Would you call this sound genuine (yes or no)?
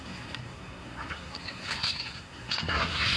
no